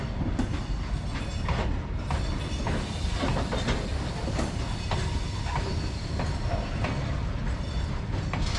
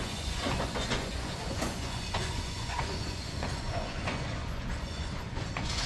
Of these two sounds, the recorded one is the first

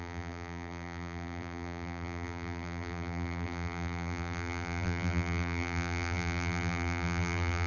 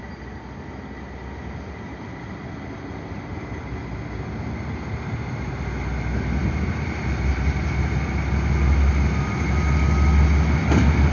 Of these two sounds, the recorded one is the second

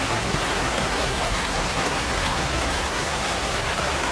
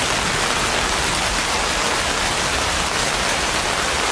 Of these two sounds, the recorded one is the second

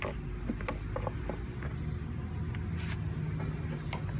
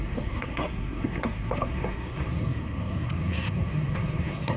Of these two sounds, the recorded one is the first